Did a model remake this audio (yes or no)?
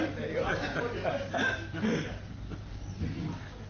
no